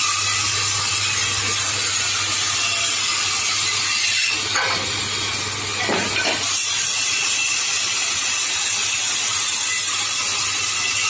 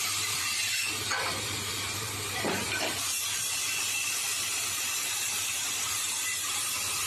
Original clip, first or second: first